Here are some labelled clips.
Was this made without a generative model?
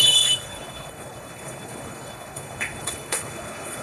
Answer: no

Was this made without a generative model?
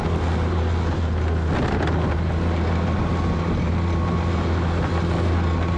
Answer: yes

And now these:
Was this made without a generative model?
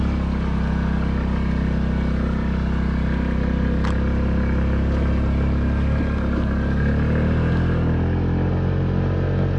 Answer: yes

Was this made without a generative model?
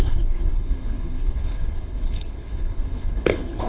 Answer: no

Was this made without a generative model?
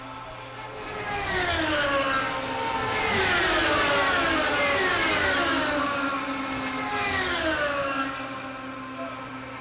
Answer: yes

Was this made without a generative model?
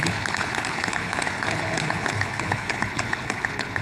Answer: no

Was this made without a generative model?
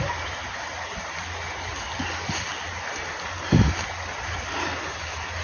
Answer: yes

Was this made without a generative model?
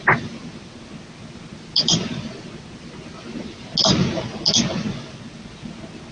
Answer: yes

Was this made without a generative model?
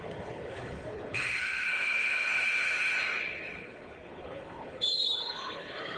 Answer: no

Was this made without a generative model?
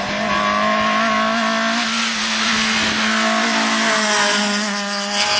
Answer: yes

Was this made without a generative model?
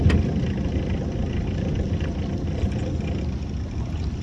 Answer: yes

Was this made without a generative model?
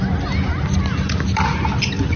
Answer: yes